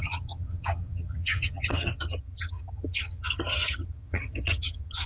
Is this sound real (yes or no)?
no